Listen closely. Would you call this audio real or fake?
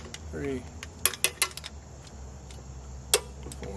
real